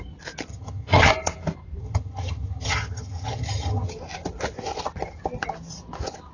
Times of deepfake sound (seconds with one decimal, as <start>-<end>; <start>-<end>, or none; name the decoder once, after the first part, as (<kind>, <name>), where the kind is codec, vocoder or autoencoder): 0.5-1.1 (vocoder, HiFi-GAN); 1.8-3.9